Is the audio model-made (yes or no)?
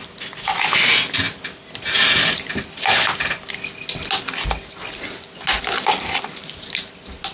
no